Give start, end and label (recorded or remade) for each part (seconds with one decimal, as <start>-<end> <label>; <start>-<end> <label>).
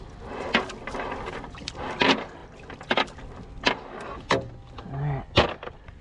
0.0-6.0 recorded